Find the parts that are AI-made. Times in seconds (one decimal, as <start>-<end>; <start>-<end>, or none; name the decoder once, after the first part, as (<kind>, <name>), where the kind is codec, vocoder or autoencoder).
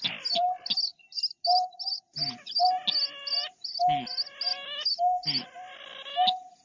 none